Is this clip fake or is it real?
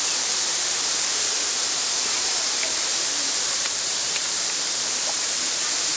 fake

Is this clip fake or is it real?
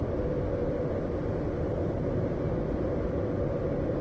real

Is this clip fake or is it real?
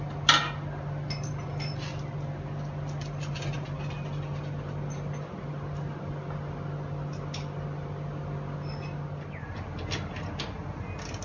real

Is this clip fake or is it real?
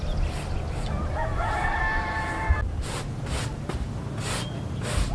real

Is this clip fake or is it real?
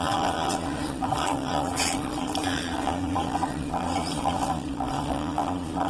fake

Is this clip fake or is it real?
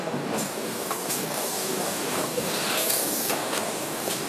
fake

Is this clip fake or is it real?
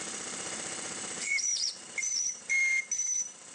fake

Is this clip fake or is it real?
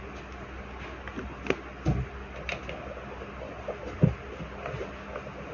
real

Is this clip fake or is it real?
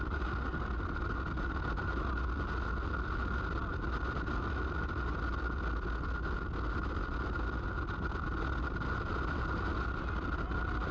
real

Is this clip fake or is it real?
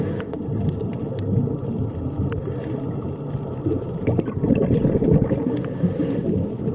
real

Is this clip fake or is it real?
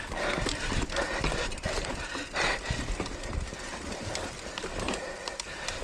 real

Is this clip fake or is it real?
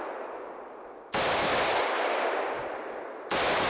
fake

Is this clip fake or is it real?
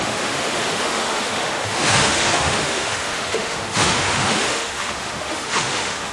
fake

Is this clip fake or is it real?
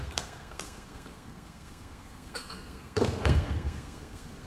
fake